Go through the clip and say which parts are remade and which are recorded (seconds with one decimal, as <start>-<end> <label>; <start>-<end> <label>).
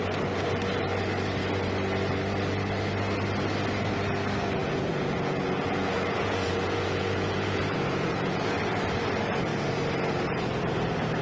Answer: 0.0-4.6 recorded; 4.6-8.6 remade; 8.6-11.2 recorded